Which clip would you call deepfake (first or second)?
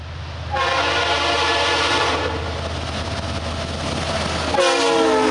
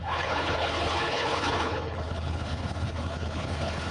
second